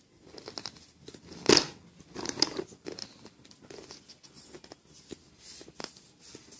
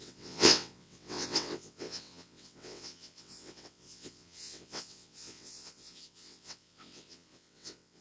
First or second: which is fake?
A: second